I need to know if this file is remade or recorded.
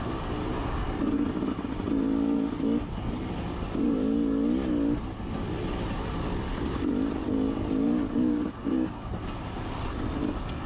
recorded